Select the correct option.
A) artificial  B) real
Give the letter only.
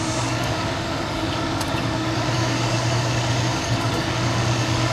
A